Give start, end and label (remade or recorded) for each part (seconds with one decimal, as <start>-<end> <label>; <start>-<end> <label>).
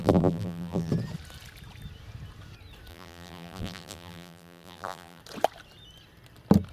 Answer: 0.0-0.9 remade; 0.9-2.9 recorded; 2.9-5.2 remade; 5.2-6.7 recorded